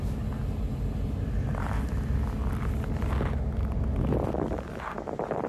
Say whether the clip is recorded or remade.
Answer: recorded